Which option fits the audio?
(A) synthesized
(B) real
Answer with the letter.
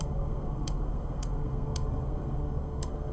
A